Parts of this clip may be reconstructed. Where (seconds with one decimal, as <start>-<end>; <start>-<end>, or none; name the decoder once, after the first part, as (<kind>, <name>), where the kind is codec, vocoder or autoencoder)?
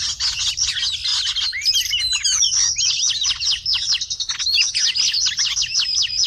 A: none